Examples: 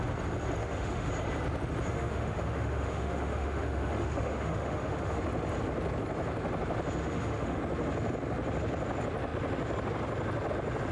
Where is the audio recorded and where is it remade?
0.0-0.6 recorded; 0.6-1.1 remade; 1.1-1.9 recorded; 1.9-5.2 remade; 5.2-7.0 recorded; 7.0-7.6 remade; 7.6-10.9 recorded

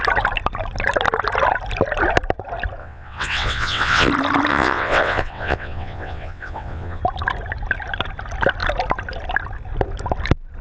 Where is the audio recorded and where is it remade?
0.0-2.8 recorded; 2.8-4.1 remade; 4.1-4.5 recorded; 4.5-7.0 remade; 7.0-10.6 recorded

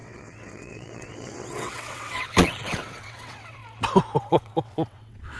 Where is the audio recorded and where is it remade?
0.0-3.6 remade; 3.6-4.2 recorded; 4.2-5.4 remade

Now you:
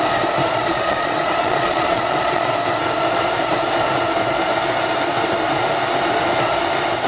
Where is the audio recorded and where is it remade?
0.0-0.4 recorded; 0.4-2.5 remade; 2.5-7.1 recorded

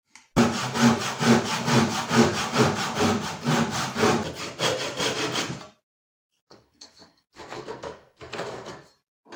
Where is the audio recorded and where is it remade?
0.0-6.0 recorded; 6.0-8.7 remade; 8.7-9.4 recorded

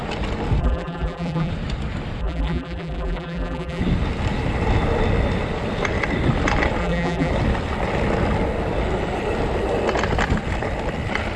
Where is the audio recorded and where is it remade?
0.0-0.6 recorded; 0.6-1.5 remade; 1.5-2.2 recorded; 2.2-3.8 remade; 3.8-6.8 recorded; 6.8-7.3 remade; 7.3-11.4 recorded